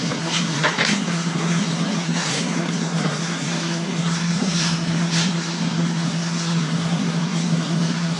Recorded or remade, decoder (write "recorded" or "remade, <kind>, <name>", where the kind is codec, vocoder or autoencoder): remade, codec, SNAC